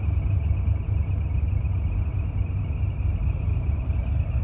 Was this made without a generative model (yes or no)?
yes